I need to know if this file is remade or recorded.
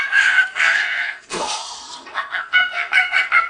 remade